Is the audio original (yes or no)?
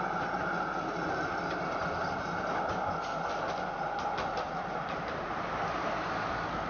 yes